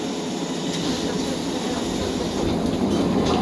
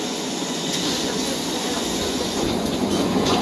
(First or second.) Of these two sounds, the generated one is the second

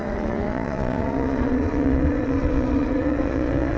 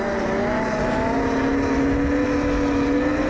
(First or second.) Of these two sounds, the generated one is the first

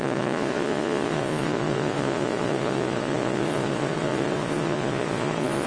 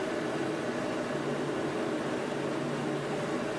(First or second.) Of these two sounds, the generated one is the first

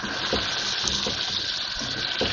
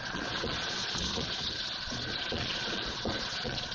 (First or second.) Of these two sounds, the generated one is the second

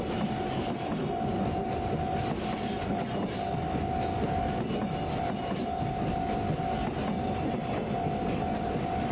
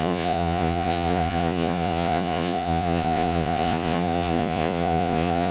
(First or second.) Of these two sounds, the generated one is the second